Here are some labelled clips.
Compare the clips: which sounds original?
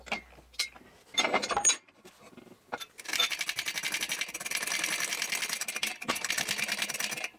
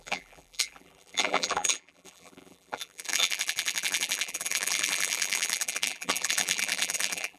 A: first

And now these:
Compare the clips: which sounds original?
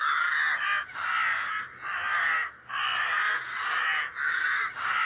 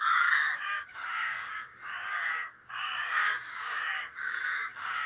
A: first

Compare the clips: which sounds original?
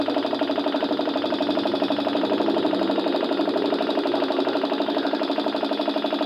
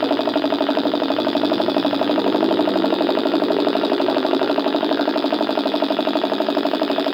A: first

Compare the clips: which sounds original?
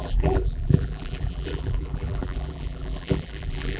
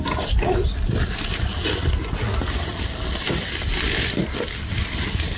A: second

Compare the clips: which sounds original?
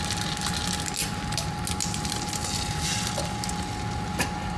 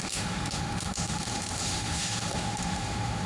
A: first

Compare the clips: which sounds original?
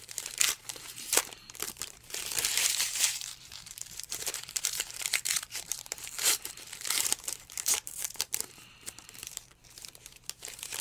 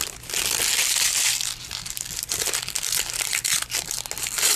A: second